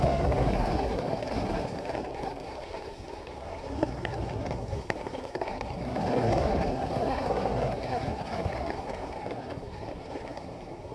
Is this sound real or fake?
fake